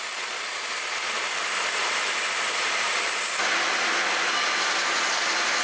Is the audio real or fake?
fake